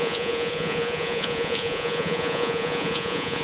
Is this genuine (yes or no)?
no